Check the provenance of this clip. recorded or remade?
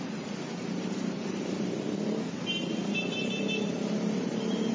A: recorded